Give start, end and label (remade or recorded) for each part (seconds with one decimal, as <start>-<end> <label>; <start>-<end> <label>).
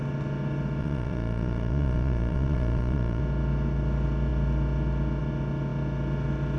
0.0-0.8 recorded; 0.8-3.2 remade; 3.2-6.6 recorded